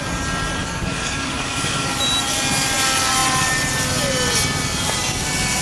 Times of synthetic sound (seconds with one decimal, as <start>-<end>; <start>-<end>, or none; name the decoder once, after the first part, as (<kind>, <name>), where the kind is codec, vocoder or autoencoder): 0.6-2.0 (codec, DAC)